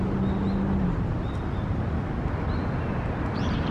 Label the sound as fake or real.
real